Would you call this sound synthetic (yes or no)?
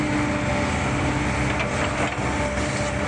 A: no